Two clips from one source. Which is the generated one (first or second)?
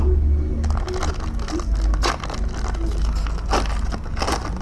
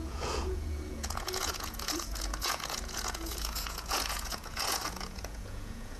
second